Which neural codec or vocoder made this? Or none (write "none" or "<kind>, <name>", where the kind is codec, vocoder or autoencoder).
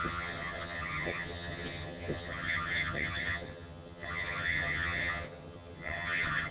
vocoder, HiFi-GAN